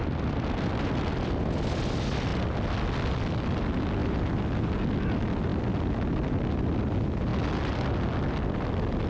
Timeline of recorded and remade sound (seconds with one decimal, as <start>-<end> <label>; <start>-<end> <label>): 0.0-4.0 recorded; 4.0-4.7 remade; 4.7-9.1 recorded